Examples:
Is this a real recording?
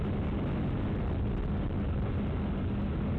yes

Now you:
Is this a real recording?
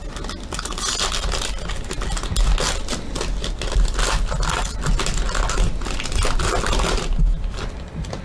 yes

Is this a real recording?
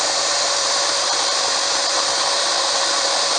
no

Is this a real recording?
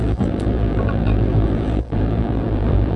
no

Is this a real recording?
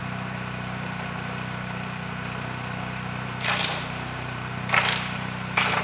no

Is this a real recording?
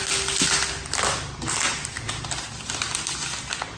yes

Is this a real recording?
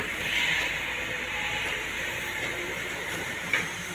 no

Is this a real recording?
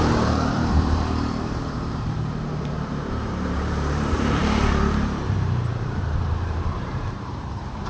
no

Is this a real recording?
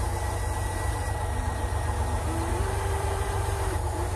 no